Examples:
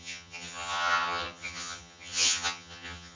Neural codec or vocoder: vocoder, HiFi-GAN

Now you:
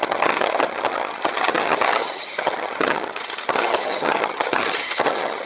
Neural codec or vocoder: vocoder, HiFi-GAN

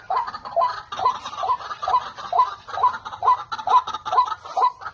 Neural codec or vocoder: none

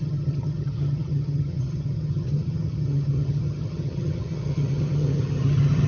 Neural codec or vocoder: vocoder, HiFi-GAN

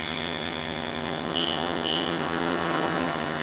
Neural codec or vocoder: vocoder, HiFi-GAN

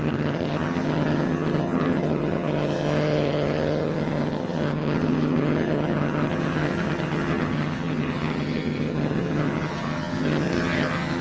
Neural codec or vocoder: vocoder, HiFi-GAN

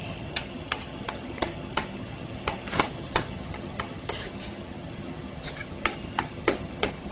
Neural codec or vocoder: vocoder, HiFi-GAN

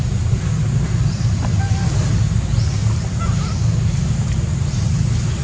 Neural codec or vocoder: none